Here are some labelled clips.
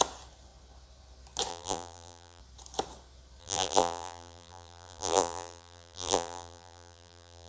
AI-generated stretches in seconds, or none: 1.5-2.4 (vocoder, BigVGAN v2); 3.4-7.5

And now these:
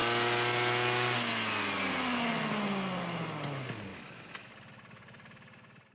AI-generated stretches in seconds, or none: 3.9-4.5 (autoencoder, DAC-VAE)

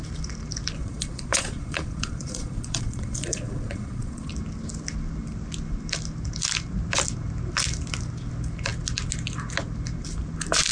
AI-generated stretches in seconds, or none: 0.8-4.3 (vocoder, Vocos)

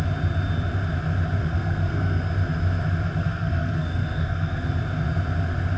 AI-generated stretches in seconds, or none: 1.4-2.3 (codec, SNAC); 3.2-4.7

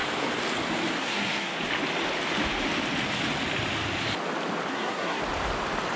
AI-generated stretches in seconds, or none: 1.0-1.5 (codec, SNAC); 4.7-5.2

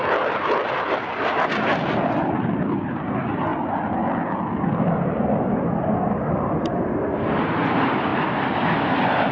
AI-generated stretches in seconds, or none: none